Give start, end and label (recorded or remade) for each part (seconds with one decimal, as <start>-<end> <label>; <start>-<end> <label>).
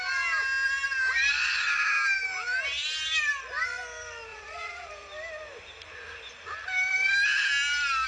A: 0.0-4.3 recorded; 4.3-4.9 remade; 4.9-8.1 recorded